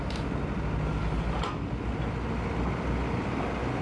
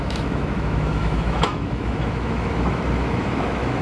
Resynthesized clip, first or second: second